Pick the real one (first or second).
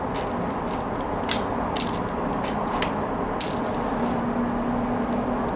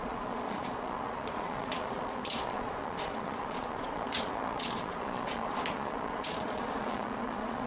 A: first